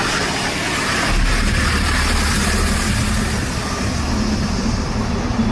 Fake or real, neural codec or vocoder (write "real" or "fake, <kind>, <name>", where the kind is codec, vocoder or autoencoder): real